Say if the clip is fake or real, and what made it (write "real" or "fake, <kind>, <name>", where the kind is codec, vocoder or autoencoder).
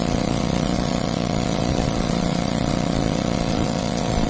fake, vocoder, Vocos